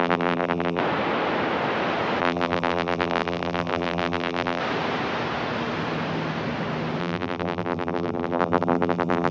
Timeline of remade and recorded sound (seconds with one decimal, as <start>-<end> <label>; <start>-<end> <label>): 0.0-0.8 remade; 0.8-2.2 recorded; 2.2-4.6 remade; 4.6-7.0 recorded; 7.0-9.3 remade